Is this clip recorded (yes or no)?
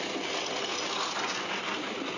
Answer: yes